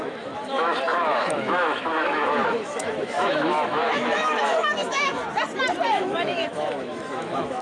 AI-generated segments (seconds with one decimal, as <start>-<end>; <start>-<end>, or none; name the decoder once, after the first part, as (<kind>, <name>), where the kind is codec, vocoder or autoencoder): 0.0-5.2 (autoencoder, DAC-VAE); 5.9-7.6